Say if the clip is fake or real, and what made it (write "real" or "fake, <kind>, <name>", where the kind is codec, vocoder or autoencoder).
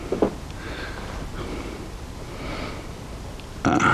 real